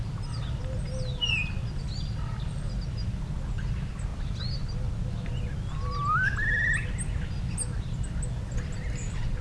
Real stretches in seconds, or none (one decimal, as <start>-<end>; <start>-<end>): 0.0-9.4